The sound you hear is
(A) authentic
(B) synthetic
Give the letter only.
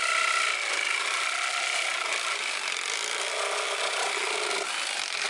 A